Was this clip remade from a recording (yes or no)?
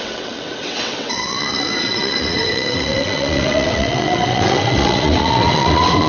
yes